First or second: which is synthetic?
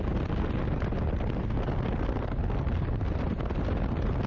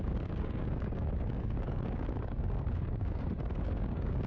second